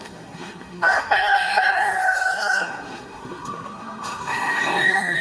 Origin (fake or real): fake